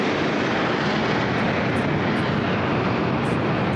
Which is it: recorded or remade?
recorded